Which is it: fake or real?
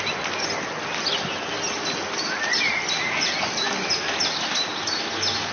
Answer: real